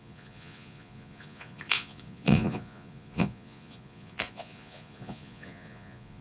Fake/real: fake